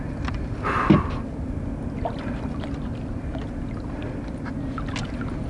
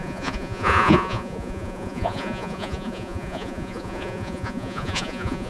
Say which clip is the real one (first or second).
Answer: first